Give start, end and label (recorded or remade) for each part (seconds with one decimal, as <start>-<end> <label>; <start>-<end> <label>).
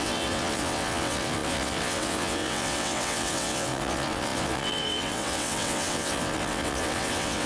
0.0-7.5 remade